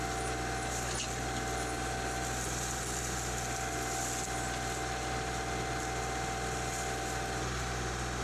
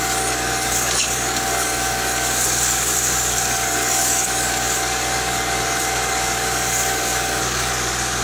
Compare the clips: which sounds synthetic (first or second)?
second